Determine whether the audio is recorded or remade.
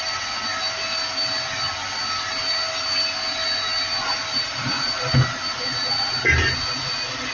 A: recorded